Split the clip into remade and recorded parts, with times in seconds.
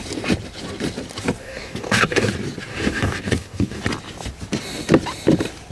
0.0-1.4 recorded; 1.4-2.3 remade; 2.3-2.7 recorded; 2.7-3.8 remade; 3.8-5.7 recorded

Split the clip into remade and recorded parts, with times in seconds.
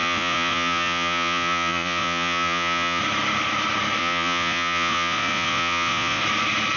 0.0-3.0 remade; 3.0-4.0 recorded; 4.0-6.2 remade; 6.2-6.8 recorded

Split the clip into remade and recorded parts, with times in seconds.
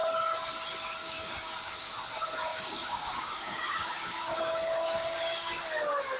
0.0-1.0 recorded; 1.0-1.9 remade; 1.9-2.5 recorded; 2.5-5.6 remade; 5.6-6.2 recorded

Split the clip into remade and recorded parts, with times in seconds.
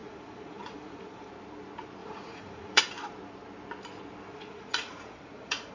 0.0-1.3 remade; 1.3-2.0 recorded; 2.0-2.8 remade; 2.8-4.3 recorded; 4.3-5.7 remade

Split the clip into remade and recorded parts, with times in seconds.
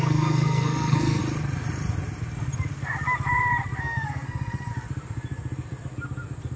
0.0-1.2 remade; 1.2-3.8 recorded; 3.8-4.7 remade; 4.7-6.6 recorded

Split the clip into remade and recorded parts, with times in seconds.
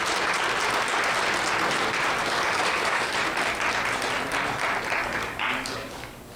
0.0-2.2 recorded; 2.2-3.1 remade; 3.1-5.0 recorded; 5.0-6.4 remade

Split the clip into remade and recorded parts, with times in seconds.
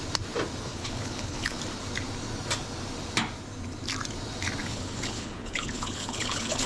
0.0-0.7 recorded; 0.7-1.6 remade; 1.6-4.6 recorded; 4.6-6.7 remade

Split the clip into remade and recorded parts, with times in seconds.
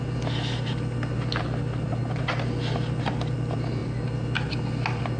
0.0-5.2 recorded